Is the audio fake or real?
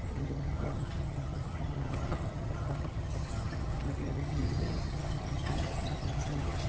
fake